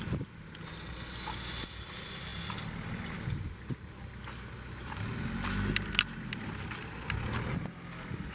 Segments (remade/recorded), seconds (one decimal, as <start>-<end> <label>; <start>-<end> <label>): 0.0-8.3 recorded